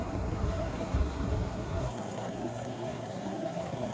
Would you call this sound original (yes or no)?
no